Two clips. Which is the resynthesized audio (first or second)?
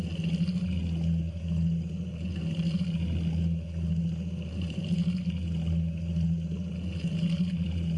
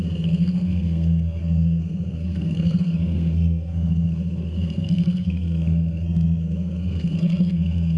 second